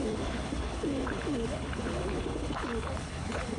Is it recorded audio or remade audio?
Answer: remade